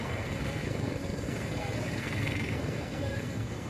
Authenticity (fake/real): fake